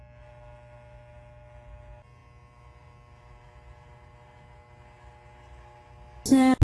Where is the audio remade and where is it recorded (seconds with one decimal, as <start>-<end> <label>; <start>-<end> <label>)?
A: 0.0-6.6 recorded